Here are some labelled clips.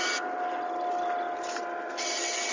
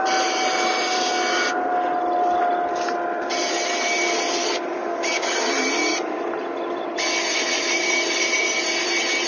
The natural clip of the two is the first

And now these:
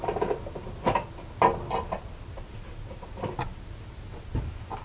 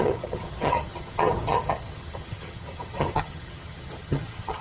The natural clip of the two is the first